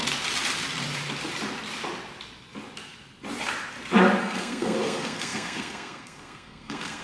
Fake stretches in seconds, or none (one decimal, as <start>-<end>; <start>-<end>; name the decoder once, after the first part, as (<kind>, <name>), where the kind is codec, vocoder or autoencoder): 4.2-7.0 (codec, SNAC)